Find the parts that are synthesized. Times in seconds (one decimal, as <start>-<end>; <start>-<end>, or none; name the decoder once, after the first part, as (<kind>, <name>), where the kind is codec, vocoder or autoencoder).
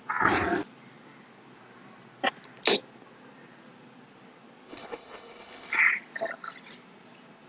4.7-5.8 (codec, HILCodec)